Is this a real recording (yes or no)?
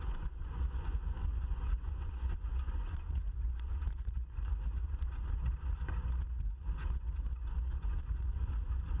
no